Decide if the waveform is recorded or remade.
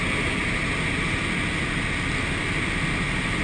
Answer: recorded